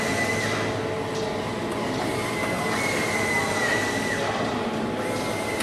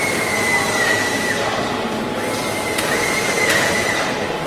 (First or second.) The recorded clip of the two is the first